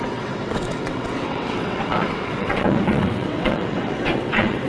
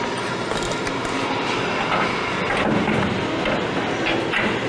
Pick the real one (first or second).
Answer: second